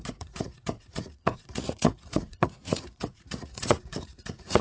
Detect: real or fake fake